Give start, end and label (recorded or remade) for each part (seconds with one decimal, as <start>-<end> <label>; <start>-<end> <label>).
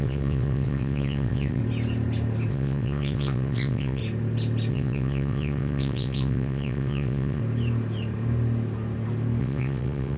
0.0-1.6 remade; 1.6-2.5 recorded; 2.5-4.0 remade; 4.0-4.7 recorded; 4.7-7.4 remade; 7.4-9.4 recorded; 9.4-10.2 remade